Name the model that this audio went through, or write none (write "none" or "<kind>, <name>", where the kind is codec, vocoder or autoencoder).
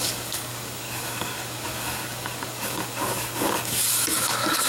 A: codec, DAC